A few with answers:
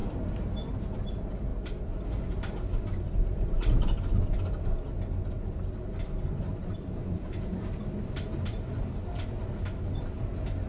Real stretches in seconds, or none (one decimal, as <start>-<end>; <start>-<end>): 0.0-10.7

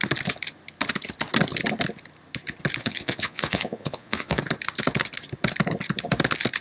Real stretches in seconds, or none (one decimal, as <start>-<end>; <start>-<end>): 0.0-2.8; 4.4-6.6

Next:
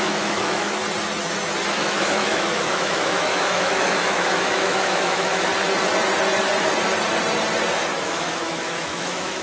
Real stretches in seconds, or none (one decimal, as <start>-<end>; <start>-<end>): 0.8-1.7; 5.5-8.0